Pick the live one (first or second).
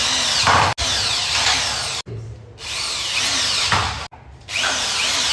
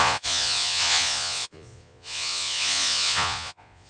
first